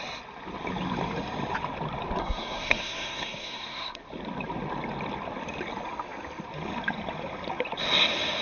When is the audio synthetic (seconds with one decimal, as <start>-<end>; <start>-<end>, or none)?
2.2-4.0